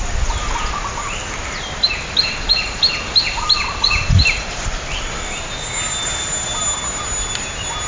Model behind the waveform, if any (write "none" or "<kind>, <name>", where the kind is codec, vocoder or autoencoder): none